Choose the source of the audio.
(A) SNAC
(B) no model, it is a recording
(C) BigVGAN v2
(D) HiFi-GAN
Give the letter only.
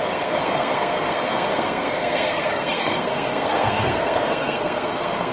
A